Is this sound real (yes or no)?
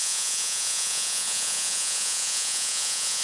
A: no